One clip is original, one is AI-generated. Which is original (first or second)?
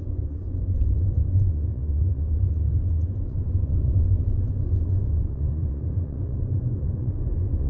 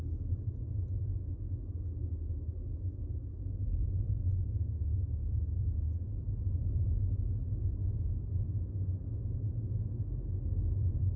second